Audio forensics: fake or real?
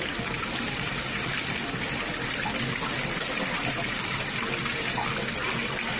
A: real